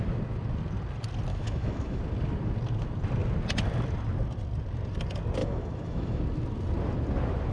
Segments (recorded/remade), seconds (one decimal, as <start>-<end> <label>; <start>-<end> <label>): 0.0-1.3 recorded; 1.3-2.0 remade; 2.0-5.4 recorded; 5.4-6.2 remade; 6.2-7.5 recorded